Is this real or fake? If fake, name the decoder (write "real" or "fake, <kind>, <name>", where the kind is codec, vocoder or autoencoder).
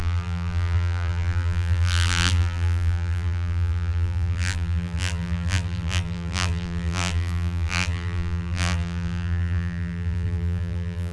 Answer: fake, vocoder, BigVGAN v2